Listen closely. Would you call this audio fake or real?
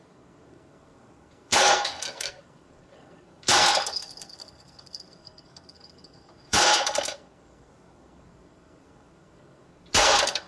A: fake